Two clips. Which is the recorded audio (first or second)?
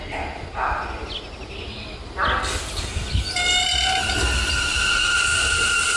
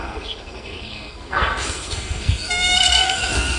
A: first